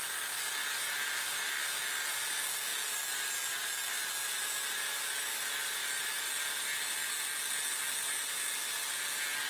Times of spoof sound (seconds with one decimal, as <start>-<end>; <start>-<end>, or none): none